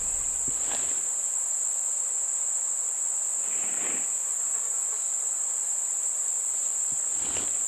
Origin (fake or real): real